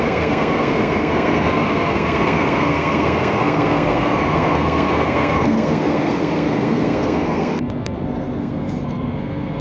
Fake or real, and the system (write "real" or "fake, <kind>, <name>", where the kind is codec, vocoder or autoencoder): fake, codec, SNAC